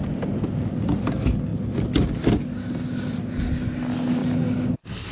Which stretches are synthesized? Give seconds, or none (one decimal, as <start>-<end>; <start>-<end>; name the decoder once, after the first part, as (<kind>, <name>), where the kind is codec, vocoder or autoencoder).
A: none